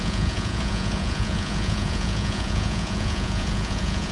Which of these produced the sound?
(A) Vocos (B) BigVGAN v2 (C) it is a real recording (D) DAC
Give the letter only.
A